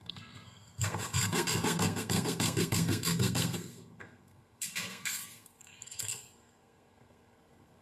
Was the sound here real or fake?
fake